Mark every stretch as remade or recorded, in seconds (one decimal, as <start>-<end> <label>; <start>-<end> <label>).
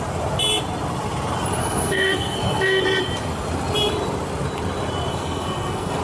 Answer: 0.0-1.6 recorded; 1.6-2.8 remade; 2.8-5.1 recorded; 5.1-6.0 remade